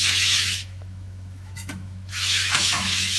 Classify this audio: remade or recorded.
remade